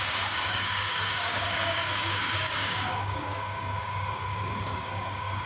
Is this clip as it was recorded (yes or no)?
no